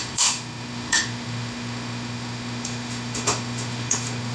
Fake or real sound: fake